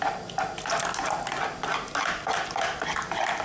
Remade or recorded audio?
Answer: recorded